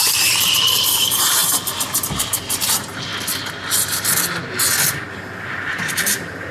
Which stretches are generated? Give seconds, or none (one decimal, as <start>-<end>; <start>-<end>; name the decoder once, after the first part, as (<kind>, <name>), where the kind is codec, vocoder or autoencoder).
0.0-1.4 (vocoder, BigVGAN v2); 2.6-3.1; 5.7-6.5